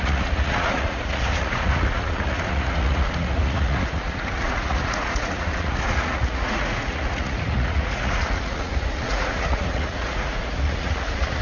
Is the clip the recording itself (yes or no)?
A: no